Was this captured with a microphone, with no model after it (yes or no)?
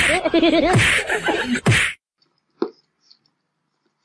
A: yes